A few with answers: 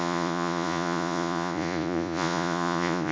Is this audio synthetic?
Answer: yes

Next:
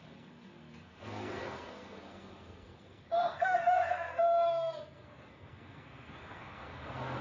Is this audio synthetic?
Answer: yes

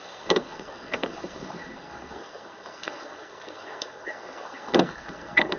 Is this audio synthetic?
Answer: yes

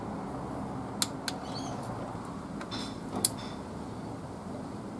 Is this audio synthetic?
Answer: no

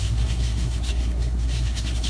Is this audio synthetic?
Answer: yes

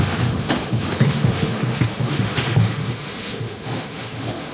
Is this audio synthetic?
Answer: yes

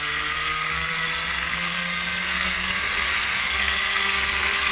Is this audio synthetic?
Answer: yes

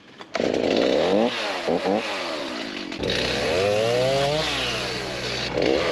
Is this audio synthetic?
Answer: no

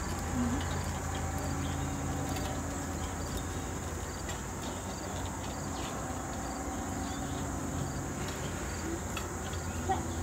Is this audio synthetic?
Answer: no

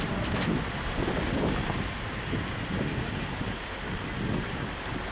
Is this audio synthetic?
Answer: no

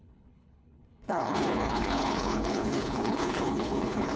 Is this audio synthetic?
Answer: yes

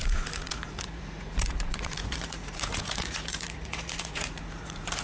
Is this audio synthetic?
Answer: yes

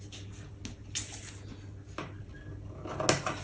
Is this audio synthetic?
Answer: no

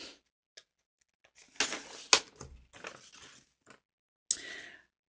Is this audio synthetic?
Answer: no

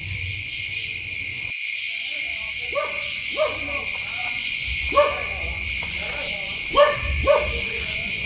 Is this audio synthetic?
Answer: yes